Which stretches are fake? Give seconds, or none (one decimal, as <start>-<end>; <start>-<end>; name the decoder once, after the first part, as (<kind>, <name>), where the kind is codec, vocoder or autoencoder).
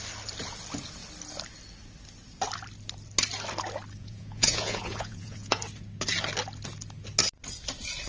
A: 4.0-5.6 (vocoder, Vocos)